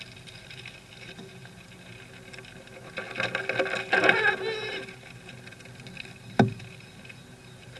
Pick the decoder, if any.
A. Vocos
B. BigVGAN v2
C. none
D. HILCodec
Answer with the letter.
C